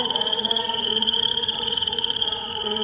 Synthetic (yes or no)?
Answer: yes